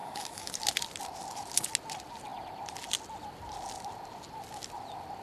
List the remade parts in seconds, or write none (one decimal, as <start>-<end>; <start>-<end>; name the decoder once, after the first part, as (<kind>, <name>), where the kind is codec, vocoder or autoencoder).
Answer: 0.0-0.5 (codec, DAC)